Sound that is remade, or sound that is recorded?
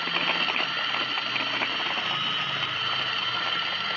recorded